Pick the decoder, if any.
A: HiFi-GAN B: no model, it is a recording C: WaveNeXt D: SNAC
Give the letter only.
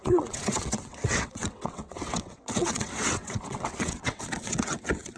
C